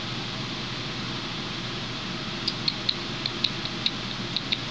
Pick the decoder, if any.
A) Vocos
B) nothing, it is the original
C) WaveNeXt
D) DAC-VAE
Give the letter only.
B